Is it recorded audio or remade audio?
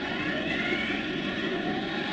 remade